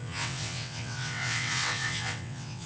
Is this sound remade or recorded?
remade